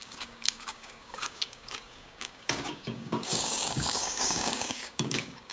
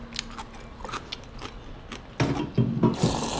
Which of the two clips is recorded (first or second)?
second